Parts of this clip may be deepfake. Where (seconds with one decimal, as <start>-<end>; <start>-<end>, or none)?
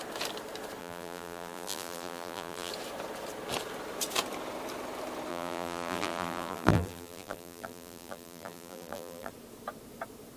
0.8-2.7; 5.3-9.3